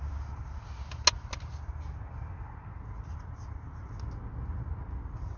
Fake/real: real